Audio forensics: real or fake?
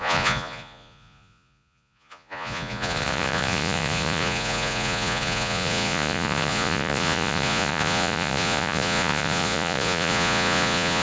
fake